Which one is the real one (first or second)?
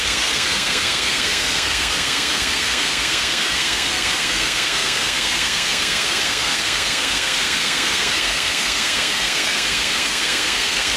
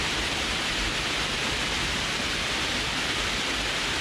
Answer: second